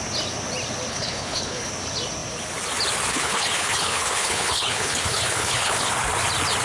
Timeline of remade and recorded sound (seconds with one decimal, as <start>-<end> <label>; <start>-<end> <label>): 0.0-0.9 recorded; 0.9-1.7 remade; 1.7-3.1 recorded; 3.1-5.9 remade; 5.9-6.6 recorded